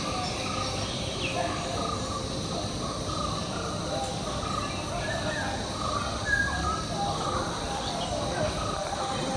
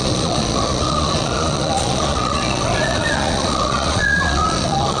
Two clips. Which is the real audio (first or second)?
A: first